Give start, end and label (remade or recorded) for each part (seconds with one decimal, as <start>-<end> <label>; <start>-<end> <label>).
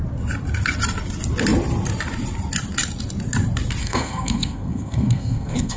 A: 0.0-3.8 recorded; 3.8-5.8 remade